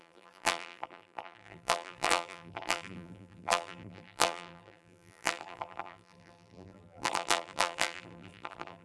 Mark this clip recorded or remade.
remade